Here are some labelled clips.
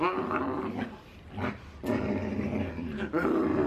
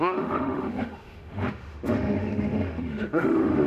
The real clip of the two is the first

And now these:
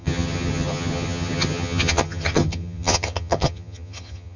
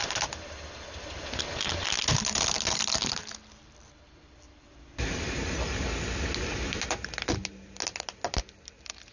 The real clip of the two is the second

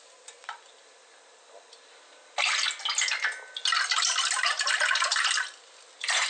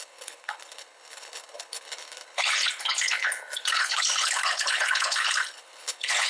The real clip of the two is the first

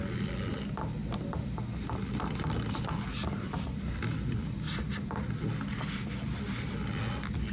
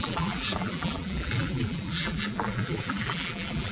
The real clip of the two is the first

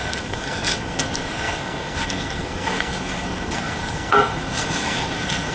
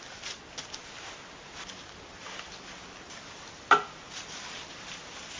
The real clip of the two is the second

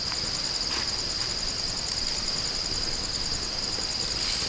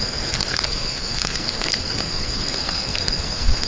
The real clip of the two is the first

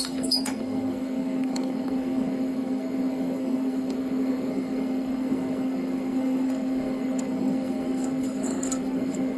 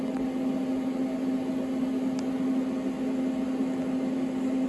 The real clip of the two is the second